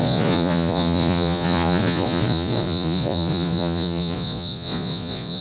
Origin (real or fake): fake